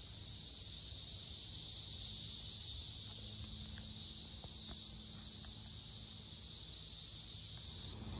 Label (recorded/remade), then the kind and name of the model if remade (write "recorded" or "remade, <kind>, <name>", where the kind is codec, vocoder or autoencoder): recorded